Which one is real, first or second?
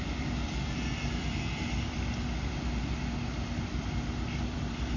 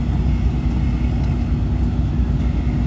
second